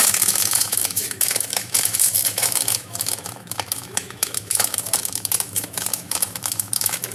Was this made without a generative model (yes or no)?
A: no